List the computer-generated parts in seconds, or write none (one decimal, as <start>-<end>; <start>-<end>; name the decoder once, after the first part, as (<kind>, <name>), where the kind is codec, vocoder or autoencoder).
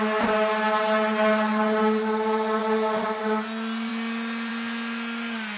none